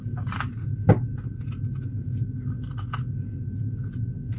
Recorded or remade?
recorded